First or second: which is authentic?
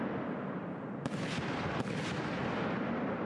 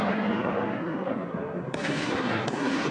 first